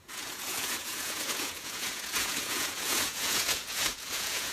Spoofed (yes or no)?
yes